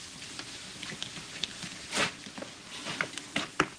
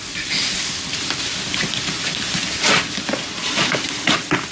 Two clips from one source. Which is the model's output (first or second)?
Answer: second